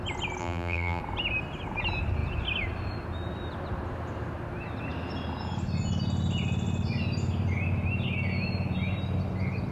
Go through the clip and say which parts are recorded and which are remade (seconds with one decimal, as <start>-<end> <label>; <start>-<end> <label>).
0.0-0.4 recorded; 0.4-1.0 remade; 1.0-9.7 recorded

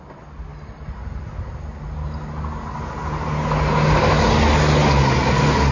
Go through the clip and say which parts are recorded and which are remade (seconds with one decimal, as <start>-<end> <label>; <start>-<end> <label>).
0.0-5.7 recorded

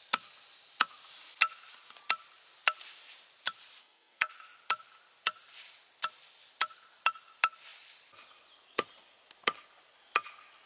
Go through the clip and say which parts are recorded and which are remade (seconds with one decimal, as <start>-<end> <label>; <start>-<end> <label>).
0.0-3.8 recorded; 3.8-4.3 remade; 4.3-10.7 recorded

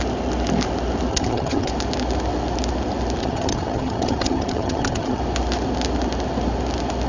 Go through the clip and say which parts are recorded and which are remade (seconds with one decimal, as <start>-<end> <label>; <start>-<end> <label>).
0.0-1.1 recorded; 1.1-1.7 remade; 1.7-3.2 recorded; 3.2-5.2 remade; 5.2-7.1 recorded

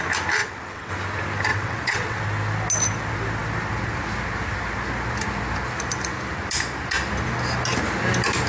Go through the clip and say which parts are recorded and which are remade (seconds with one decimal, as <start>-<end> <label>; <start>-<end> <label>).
0.0-0.4 recorded; 0.4-0.9 remade; 0.9-1.5 recorded; 1.5-2.2 remade; 2.2-8.5 recorded

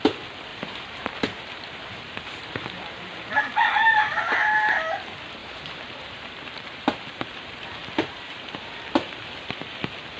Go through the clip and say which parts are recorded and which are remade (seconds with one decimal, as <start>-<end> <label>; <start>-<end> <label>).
0.0-0.5 recorded; 0.5-3.4 remade; 3.4-5.4 recorded; 5.4-8.9 remade; 8.9-10.2 recorded